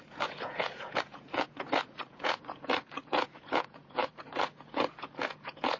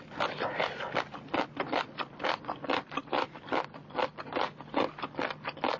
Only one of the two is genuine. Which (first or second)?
second